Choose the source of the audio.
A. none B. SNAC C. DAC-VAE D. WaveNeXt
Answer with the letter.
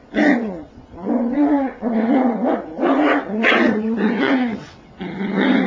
D